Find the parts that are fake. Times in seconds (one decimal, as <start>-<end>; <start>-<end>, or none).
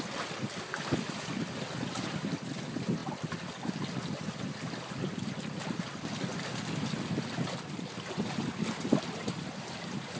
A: none